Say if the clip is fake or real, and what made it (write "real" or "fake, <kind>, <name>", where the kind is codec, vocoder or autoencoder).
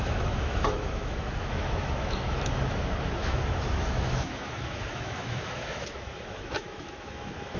fake, autoencoder, DAC-VAE